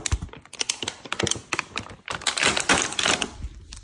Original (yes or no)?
yes